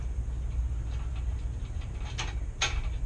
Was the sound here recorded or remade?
recorded